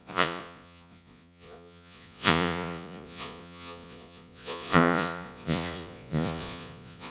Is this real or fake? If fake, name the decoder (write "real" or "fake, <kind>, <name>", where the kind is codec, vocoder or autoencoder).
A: fake, vocoder, Vocos